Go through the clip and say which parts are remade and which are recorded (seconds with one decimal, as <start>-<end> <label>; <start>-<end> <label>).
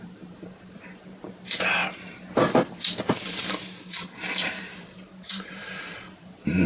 0.0-6.7 remade